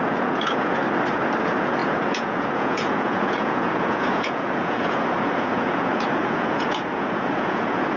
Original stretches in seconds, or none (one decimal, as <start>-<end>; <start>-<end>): 0.8-1.4